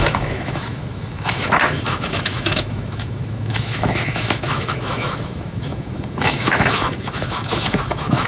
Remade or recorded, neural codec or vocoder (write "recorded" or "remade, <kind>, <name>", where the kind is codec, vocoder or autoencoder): remade, autoencoder, DAC-VAE